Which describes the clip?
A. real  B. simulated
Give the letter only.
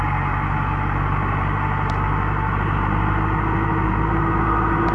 A